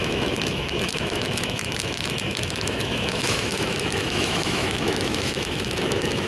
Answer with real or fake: fake